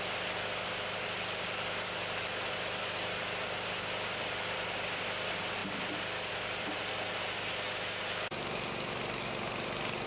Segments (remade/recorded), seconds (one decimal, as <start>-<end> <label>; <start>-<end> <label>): 0.0-10.1 recorded